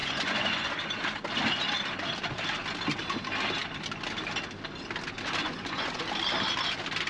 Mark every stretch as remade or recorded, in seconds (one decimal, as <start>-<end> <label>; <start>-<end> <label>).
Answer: 0.0-0.7 remade; 0.7-5.4 recorded; 5.4-6.0 remade; 6.0-7.1 recorded